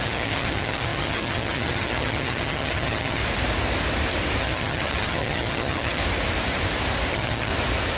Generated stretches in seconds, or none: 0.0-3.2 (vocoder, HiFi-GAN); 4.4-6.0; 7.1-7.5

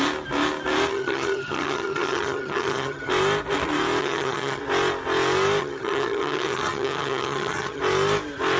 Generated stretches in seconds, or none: 0.9-3.1 (vocoder, HiFi-GAN); 4.0-4.6; 5.6-7.8

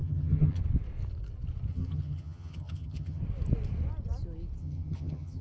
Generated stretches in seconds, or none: 0.0-0.6 (vocoder, HiFi-GAN); 1.7-3.2; 4.6-5.4

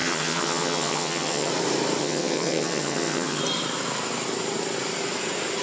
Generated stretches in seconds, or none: 0.0-1.5 (vocoder, HiFi-GAN); 2.0-3.4